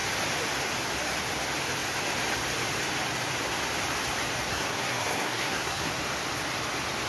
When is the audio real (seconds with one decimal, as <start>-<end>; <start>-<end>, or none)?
0.0-4.5; 5.9-7.1